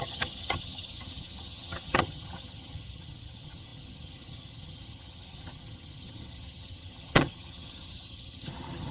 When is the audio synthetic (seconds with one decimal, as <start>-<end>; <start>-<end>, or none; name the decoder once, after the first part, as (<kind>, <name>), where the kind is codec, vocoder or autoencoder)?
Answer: 0.0-8.9 (vocoder, HiFi-GAN)

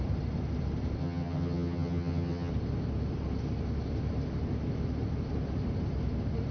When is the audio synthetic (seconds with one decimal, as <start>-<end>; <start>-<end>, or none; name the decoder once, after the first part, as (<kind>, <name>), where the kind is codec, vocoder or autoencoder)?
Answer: 1.0-2.5 (vocoder, HiFi-GAN)